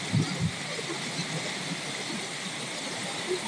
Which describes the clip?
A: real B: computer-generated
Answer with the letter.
A